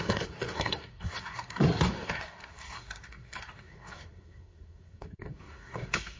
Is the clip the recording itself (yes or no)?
no